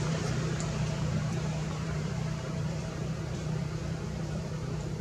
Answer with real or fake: fake